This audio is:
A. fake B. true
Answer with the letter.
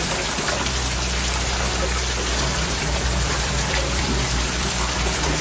A